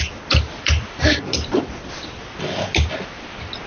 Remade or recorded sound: recorded